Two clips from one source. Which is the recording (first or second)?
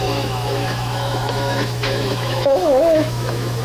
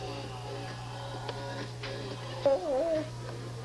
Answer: second